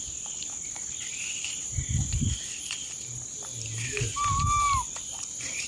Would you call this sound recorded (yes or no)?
yes